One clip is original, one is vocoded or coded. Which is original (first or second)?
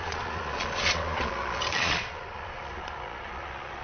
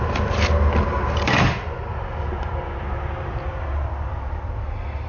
second